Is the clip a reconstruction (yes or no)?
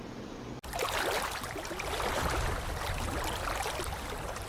no